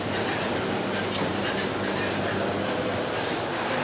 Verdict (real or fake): real